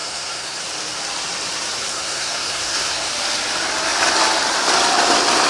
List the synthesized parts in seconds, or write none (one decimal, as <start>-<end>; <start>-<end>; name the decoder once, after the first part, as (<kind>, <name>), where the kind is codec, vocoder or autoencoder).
0.0-0.6 (codec, SNAC); 1.9-3.1